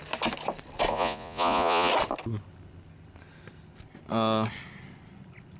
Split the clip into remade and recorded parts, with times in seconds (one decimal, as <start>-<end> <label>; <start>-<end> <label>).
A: 0.0-0.9 recorded; 0.9-1.9 remade; 1.9-5.6 recorded

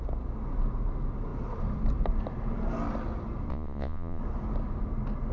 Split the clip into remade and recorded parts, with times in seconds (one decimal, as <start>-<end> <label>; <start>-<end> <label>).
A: 0.0-3.5 recorded; 3.5-4.2 remade; 4.2-5.3 recorded

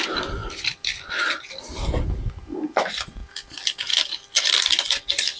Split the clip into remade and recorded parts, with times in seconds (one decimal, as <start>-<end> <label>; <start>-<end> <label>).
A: 0.0-5.4 recorded

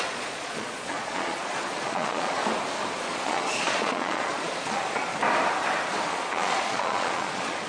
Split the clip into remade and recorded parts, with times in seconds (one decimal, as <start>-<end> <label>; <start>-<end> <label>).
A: 0.0-2.4 remade; 2.4-3.0 recorded; 3.0-5.1 remade; 5.1-6.1 recorded; 6.1-7.7 remade